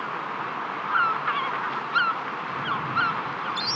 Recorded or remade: recorded